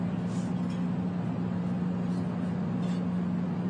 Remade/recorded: recorded